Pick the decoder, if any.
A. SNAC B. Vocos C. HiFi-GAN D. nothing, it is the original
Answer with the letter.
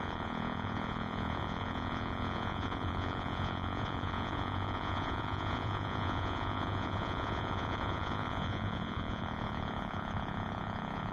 B